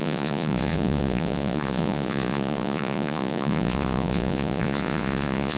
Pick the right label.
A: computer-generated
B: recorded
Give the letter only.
A